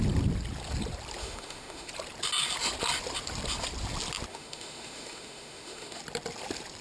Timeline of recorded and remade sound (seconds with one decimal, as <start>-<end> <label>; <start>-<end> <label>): 0.0-1.2 recorded; 1.2-1.9 remade; 1.9-4.3 recorded; 4.3-6.0 remade; 6.0-6.8 recorded